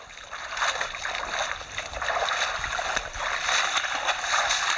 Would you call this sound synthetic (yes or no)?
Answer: no